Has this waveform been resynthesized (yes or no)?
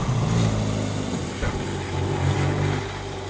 no